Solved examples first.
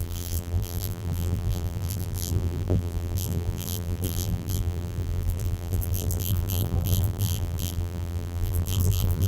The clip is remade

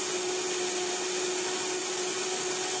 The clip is recorded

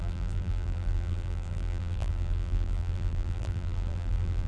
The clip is remade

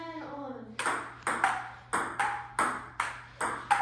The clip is recorded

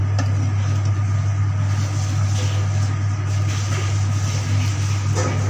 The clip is recorded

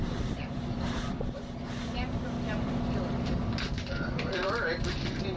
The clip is remade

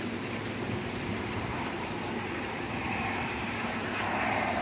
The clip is remade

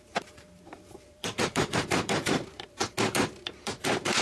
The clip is remade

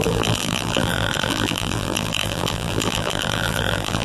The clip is remade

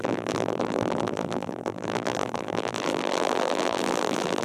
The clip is remade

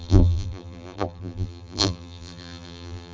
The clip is remade